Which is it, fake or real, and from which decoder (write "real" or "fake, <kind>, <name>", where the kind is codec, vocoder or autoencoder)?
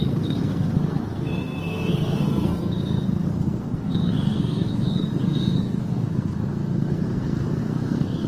fake, codec, SNAC